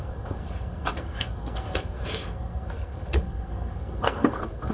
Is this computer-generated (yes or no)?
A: yes